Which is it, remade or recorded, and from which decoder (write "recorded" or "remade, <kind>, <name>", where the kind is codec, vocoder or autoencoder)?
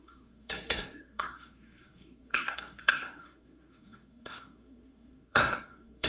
remade, codec, SNAC